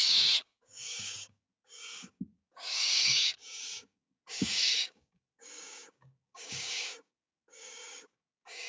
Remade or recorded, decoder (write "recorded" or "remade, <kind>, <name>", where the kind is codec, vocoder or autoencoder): remade, codec, DAC